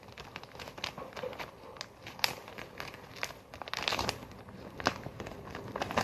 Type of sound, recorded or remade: recorded